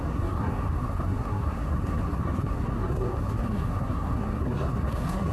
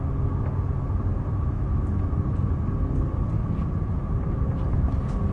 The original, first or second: second